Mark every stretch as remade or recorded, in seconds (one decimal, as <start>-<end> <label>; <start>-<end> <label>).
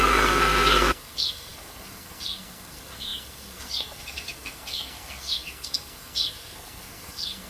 0.0-7.5 remade